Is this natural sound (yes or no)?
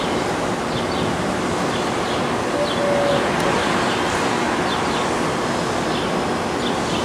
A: yes